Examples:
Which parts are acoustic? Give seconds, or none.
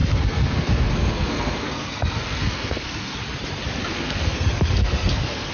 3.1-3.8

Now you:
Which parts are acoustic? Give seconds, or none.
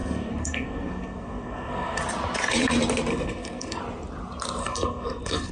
2.0-3.1; 3.8-4.6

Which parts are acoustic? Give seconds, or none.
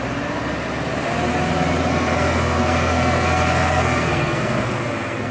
0.0-1.9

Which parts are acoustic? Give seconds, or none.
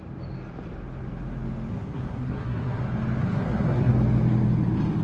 0.0-1.7; 2.8-3.2; 3.9-5.0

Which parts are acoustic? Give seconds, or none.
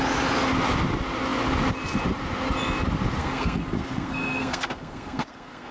0.0-3.2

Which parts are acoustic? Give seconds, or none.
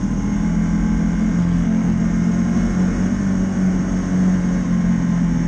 0.0-1.4; 2.0-5.5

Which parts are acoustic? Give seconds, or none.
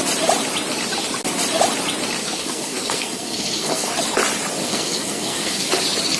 0.0-2.2; 3.9-4.6; 5.7-6.2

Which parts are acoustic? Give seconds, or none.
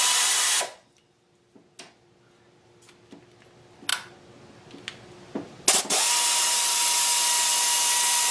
0.0-8.3